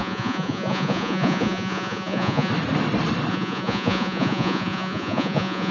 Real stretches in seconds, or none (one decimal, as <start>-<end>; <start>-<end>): 2.5-3.3